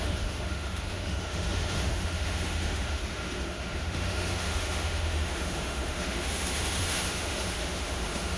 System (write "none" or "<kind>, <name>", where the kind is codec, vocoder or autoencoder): autoencoder, DAC-VAE